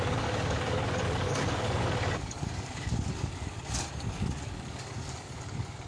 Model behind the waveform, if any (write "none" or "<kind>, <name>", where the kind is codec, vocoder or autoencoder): codec, DAC